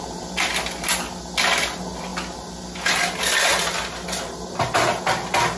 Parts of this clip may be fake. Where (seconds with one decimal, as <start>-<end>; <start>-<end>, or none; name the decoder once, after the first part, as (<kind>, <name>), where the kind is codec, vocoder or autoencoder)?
none